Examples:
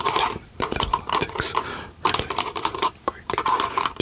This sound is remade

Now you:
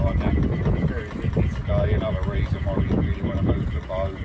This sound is recorded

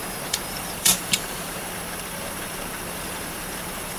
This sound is remade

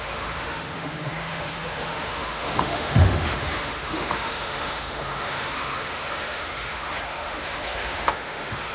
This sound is remade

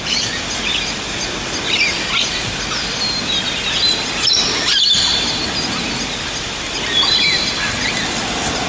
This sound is recorded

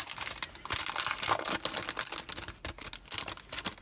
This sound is recorded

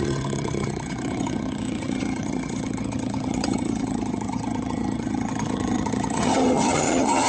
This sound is remade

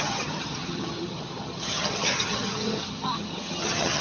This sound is remade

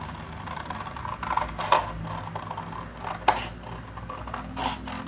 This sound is remade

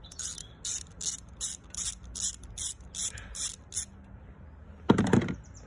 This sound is recorded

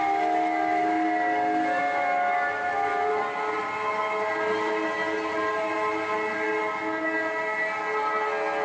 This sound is recorded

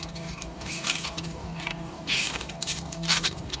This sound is remade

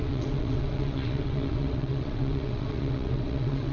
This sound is remade